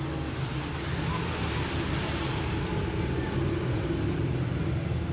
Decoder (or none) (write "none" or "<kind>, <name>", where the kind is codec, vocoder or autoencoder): none